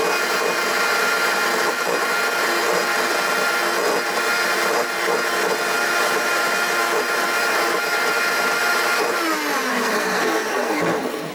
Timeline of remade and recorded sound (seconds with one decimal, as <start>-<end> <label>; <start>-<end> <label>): 0.0-9.7 recorded; 9.7-11.3 remade